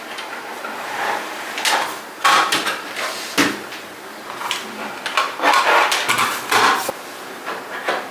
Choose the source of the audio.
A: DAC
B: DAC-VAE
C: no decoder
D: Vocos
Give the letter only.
C